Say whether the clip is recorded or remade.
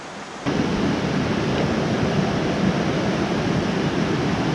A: recorded